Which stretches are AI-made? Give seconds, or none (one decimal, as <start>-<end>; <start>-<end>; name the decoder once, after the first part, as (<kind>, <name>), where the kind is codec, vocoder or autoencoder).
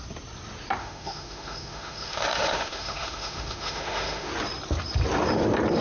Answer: 0.8-4.3 (autoencoder, DAC-VAE)